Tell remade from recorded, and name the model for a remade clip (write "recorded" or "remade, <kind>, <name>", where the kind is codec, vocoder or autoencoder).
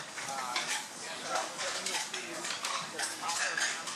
remade, codec, DAC